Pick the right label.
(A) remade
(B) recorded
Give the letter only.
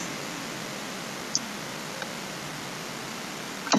B